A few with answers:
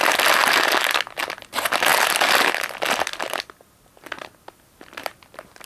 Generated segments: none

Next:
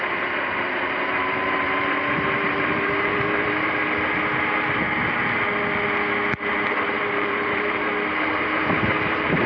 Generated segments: 0.0-3.8 (vocoder, BigVGAN v2); 7.0-9.5

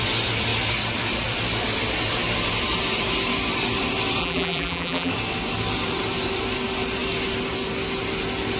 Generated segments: 4.2-5.1 (vocoder, BigVGAN v2)

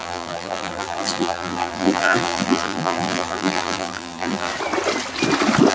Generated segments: 0.0-4.5 (vocoder, BigVGAN v2)

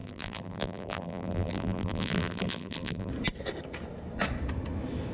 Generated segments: 0.0-3.1 (vocoder, BigVGAN v2)

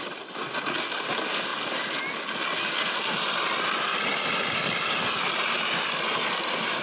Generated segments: none

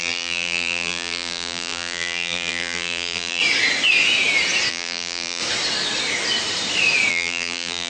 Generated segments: 0.0-3.4 (vocoder, BigVGAN v2); 4.7-5.4; 7.1-7.9